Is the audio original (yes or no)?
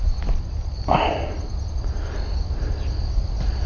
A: yes